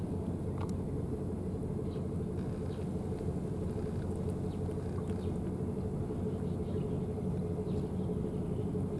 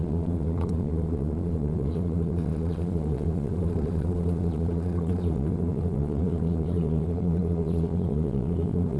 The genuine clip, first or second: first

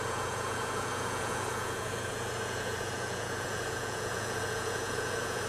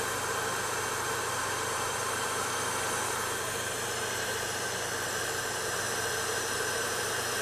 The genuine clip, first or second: second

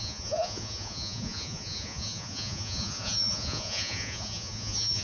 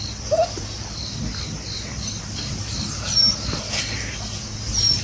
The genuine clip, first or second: second